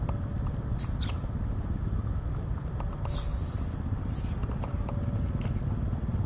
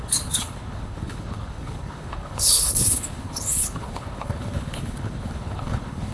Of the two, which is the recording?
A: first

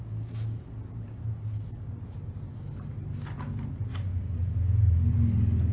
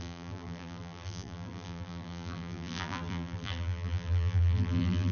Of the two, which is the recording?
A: first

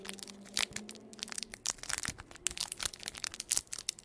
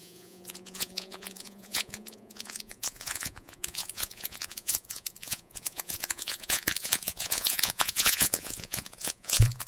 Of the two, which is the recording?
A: first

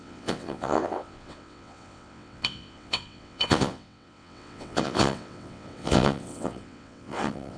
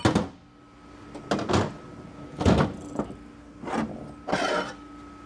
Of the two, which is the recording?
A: second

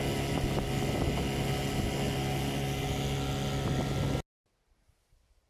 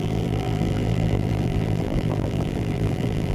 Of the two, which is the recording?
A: first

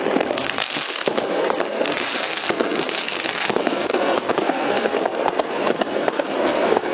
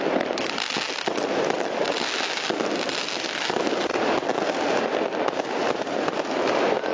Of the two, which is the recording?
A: second